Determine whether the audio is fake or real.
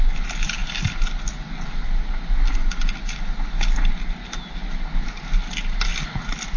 real